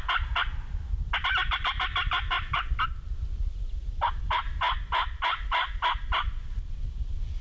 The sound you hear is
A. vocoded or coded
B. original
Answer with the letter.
B